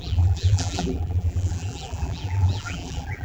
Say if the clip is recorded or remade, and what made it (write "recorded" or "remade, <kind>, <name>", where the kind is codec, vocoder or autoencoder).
remade, vocoder, BigVGAN v2